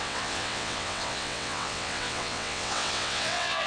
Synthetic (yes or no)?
yes